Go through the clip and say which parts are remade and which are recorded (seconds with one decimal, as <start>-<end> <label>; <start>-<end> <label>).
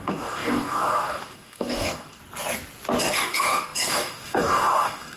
0.0-2.2 remade; 2.2-3.0 recorded; 3.0-5.2 remade